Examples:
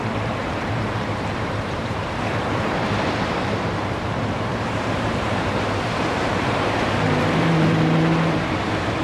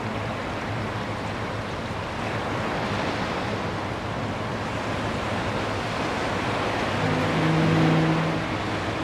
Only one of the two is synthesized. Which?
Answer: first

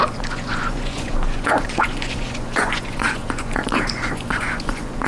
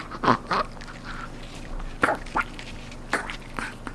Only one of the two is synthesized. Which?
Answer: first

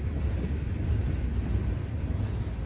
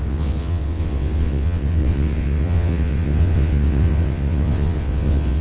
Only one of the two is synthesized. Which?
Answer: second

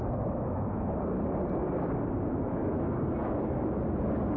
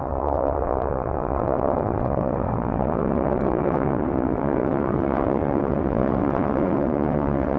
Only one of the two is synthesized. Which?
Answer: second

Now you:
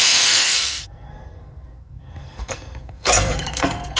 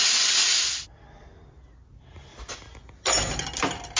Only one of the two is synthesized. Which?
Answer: first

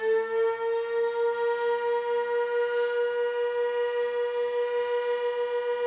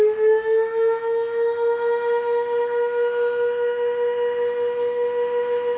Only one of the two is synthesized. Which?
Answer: second